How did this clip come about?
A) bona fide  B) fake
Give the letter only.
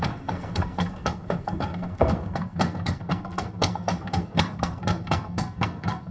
B